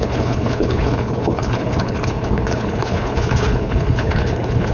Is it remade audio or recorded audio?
remade